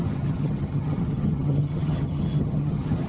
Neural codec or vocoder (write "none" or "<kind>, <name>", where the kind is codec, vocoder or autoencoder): vocoder, HiFi-GAN